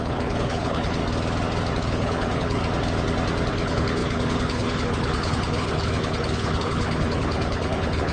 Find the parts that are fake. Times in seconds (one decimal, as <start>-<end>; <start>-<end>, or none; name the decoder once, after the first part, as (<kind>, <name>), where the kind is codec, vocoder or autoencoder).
0.0-1.0 (codec, HILCodec); 1.8-2.6; 3.5-8.1